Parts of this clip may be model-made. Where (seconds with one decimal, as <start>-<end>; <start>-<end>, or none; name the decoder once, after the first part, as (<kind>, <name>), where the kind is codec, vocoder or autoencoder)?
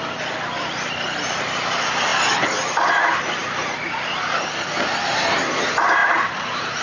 6.0-6.8 (vocoder, BigVGAN v2)